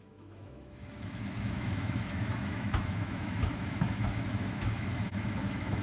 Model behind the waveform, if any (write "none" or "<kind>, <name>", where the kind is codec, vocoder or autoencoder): autoencoder, DAC-VAE